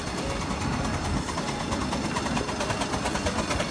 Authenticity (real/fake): real